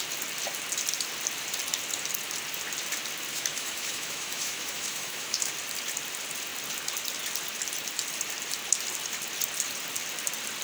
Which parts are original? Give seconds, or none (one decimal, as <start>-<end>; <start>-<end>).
0.0-3.3; 5.5-10.6